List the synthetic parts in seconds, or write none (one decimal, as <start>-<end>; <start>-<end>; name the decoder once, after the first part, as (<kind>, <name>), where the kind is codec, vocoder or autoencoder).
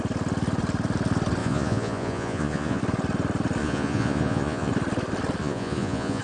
1.4-2.8 (vocoder, Vocos); 3.6-4.7; 5.4-6.2